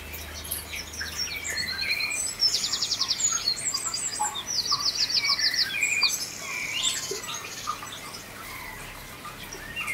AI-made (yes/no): no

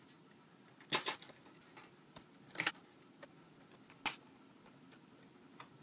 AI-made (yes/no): no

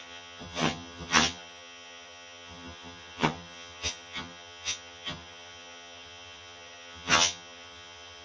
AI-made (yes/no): yes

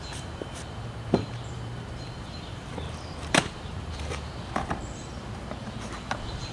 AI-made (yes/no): yes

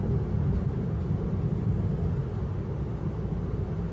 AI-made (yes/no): no